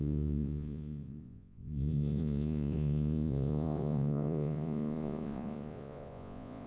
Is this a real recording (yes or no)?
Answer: no